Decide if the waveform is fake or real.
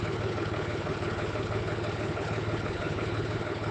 fake